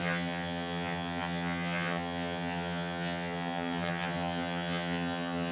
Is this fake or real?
fake